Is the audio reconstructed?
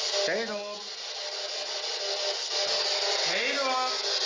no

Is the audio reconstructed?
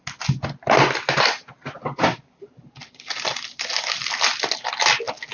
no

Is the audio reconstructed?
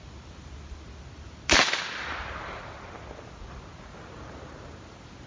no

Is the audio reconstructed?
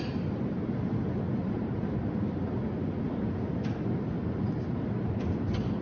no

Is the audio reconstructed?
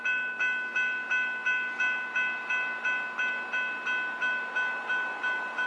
no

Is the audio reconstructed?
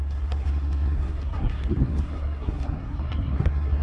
yes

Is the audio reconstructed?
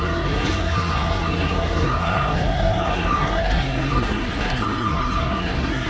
yes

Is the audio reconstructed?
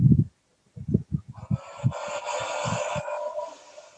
no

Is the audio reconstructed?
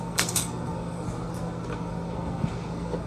yes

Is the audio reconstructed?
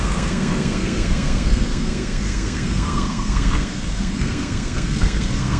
yes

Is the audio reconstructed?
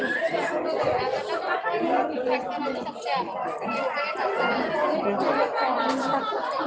no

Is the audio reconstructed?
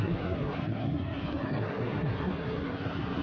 yes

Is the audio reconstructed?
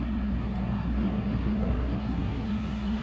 yes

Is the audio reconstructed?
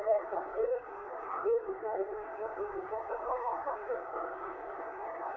yes